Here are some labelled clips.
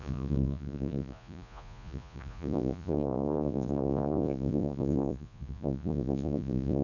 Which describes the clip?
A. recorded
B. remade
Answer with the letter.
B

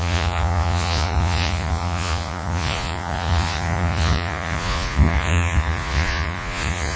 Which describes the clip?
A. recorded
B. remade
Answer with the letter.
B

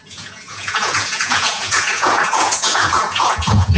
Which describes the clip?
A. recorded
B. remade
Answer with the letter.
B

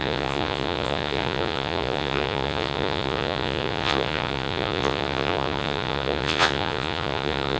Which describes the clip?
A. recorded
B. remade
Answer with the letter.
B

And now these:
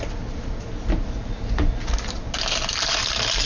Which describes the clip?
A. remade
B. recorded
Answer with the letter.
B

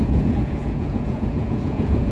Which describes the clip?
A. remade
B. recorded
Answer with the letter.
A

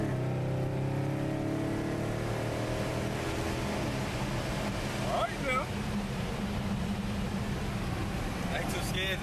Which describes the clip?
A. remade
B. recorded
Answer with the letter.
B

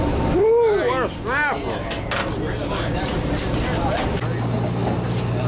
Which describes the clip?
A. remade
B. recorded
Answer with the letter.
B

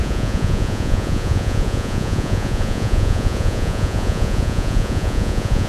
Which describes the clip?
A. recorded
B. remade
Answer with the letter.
B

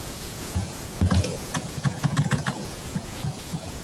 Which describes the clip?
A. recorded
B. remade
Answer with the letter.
B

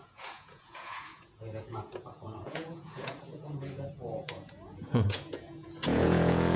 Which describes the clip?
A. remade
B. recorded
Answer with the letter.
A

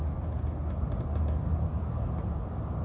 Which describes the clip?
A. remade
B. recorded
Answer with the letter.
B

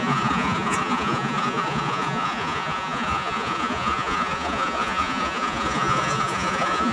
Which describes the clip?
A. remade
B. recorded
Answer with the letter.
A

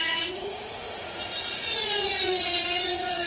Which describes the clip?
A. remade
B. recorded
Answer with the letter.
A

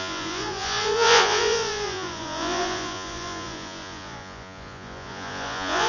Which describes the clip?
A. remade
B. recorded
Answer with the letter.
A